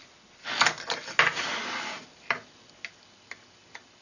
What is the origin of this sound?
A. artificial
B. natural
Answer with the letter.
B